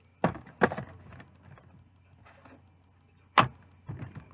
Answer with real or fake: real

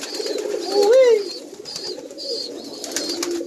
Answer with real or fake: real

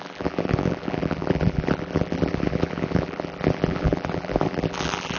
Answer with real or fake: fake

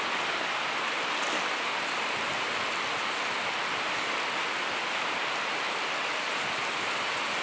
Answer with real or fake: real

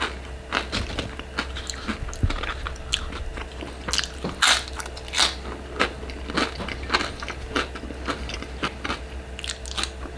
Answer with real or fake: real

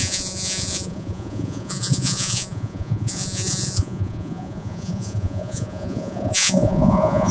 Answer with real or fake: fake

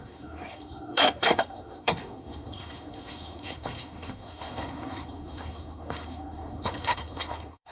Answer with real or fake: fake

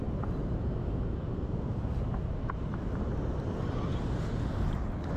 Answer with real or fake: real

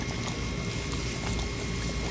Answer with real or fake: real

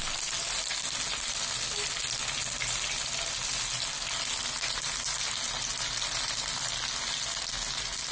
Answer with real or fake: real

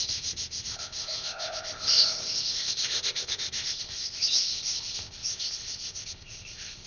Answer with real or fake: fake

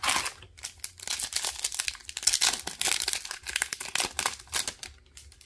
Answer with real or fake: real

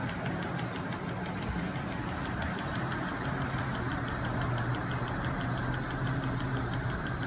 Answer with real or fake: real